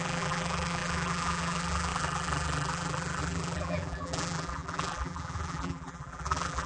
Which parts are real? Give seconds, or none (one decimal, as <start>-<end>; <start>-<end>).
none